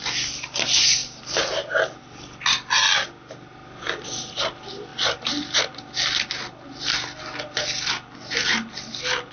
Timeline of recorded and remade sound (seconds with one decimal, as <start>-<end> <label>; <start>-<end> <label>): 0.0-9.3 recorded

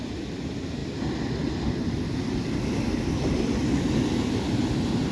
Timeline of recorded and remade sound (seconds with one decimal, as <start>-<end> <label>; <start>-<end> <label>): 0.0-5.1 recorded

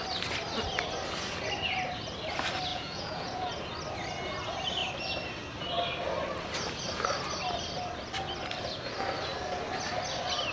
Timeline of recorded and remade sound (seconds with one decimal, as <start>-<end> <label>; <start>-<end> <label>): 0.0-2.7 recorded; 2.7-3.5 remade; 3.5-10.5 recorded

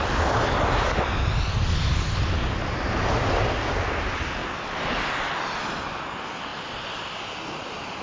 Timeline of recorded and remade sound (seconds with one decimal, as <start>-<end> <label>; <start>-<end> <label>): 0.0-8.0 recorded

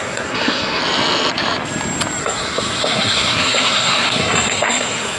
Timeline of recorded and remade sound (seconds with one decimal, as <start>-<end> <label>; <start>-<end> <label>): 0.0-0.8 remade; 0.8-2.2 recorded; 2.2-5.2 remade